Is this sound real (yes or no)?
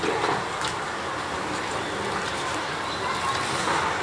yes